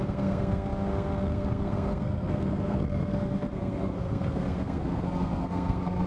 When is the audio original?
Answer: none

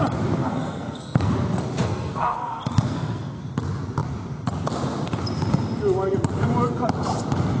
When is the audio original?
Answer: 0.0-0.4; 1.3-1.8; 3.4-7.6

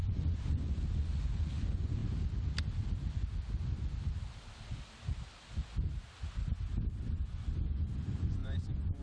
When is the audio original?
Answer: 2.0-7.0

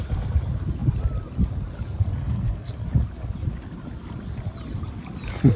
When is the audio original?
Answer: 0.0-2.2; 2.7-5.6

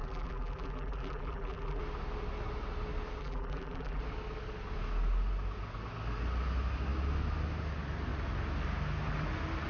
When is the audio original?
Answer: 1.8-3.2; 4.0-9.7